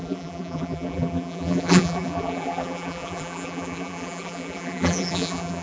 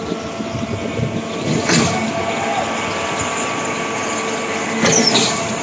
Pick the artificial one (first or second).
first